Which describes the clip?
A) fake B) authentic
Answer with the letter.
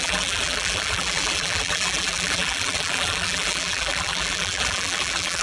A